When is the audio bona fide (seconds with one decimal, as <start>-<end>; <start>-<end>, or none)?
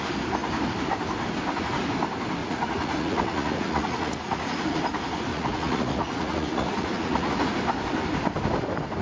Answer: 0.0-2.4; 4.8-5.3; 7.3-9.0